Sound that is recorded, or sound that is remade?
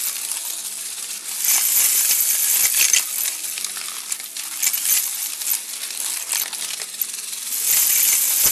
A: recorded